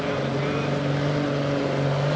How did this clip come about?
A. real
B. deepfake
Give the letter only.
A